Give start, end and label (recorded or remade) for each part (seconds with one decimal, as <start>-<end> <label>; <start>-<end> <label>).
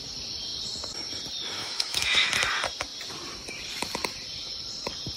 0.0-1.6 recorded; 1.6-2.3 remade; 2.3-5.2 recorded